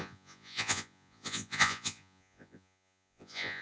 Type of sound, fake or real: fake